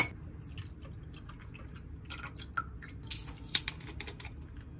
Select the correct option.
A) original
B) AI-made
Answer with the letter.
A